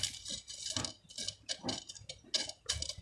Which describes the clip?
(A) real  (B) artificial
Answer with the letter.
A